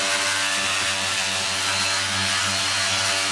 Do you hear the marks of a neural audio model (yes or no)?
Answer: no